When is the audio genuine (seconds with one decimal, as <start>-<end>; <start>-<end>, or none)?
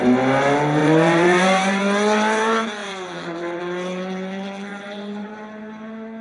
0.0-0.8; 1.8-2.8; 3.6-4.7; 5.3-6.2